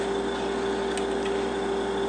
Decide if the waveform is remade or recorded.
recorded